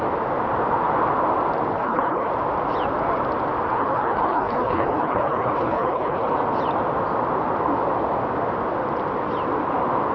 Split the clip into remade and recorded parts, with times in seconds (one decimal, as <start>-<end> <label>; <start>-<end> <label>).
0.0-1.7 recorded; 1.7-2.3 remade; 2.3-3.7 recorded; 3.7-6.3 remade; 6.3-10.1 recorded